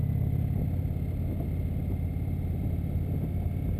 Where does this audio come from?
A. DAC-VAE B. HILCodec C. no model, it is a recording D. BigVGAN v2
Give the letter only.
C